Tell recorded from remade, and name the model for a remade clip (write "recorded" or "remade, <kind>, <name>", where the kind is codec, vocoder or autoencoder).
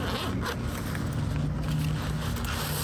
recorded